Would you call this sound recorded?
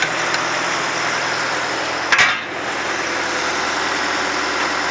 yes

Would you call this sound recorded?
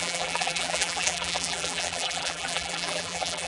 no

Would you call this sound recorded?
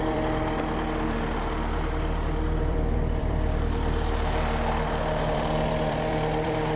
no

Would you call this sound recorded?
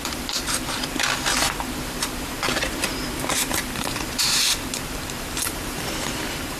no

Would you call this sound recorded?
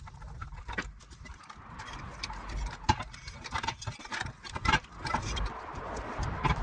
no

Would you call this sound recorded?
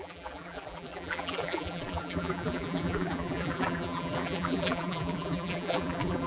no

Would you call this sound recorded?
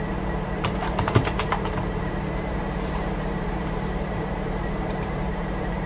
no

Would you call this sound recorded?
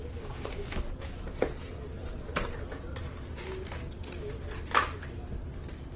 yes